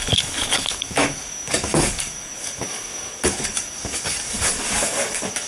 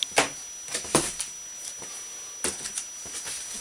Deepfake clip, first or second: first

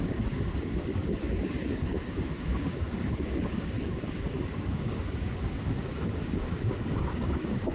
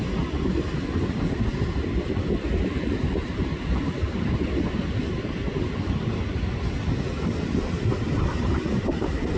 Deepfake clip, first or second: first